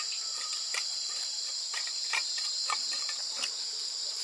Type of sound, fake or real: fake